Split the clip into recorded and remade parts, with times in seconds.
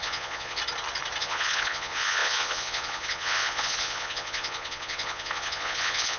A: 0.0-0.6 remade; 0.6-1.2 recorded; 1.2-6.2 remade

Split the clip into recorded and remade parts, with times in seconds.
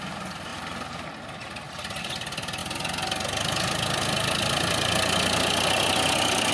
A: 0.0-6.5 recorded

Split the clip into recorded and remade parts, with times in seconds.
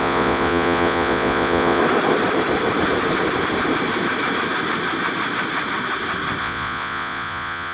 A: 0.0-1.8 remade; 1.8-6.4 recorded; 6.4-7.7 remade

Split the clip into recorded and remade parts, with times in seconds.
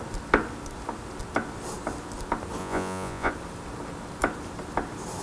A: 0.0-2.6 recorded; 2.6-3.3 remade; 3.3-5.2 recorded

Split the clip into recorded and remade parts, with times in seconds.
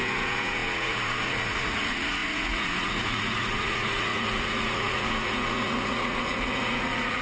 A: 0.0-7.2 remade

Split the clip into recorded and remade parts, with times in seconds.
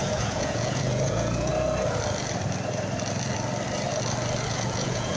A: 0.0-1.5 remade; 1.5-4.5 recorded; 4.5-5.2 remade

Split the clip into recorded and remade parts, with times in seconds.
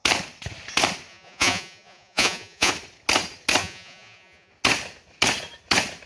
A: 0.0-1.1 recorded; 1.1-2.7 remade; 2.7-3.6 recorded; 3.6-4.5 remade; 4.5-6.1 recorded